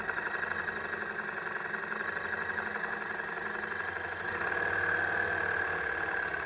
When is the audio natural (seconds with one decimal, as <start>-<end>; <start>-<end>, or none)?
0.0-6.5